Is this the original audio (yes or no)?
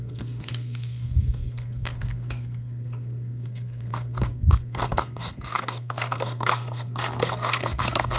no